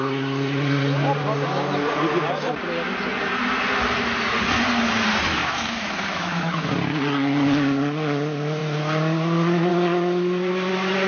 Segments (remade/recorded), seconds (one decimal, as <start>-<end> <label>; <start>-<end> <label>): 0.0-5.4 recorded; 5.4-6.7 remade; 6.7-11.1 recorded